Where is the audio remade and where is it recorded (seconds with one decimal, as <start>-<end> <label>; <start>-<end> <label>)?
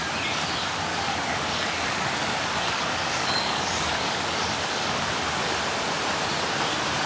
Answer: 0.0-0.9 recorded; 0.9-5.1 remade; 5.1-7.1 recorded